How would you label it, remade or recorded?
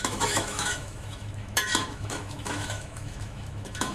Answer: remade